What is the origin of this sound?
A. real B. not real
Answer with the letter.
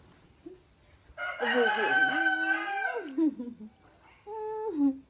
A